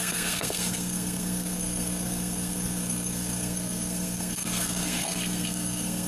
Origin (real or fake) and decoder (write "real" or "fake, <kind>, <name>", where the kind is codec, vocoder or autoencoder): fake, codec, SNAC